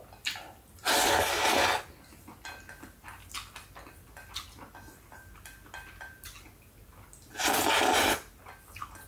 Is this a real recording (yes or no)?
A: yes